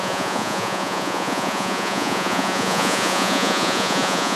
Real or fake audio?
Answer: fake